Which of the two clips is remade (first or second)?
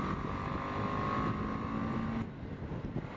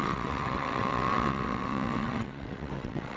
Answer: second